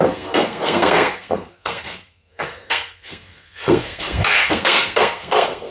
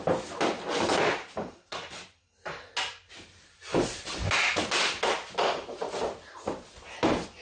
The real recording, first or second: second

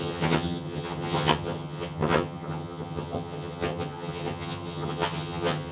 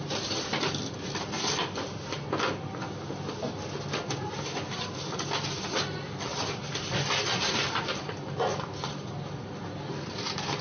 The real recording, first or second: second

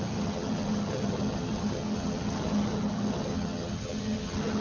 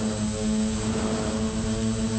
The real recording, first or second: second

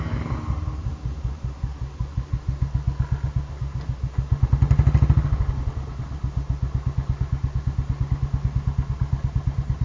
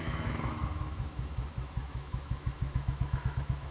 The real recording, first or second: first